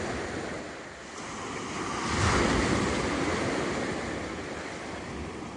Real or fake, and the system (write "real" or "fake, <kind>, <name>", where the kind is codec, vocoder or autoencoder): real